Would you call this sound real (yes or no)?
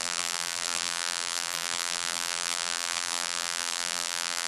no